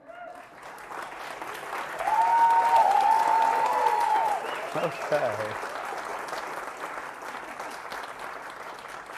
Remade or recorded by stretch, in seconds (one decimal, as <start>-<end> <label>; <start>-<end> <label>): 0.0-9.2 recorded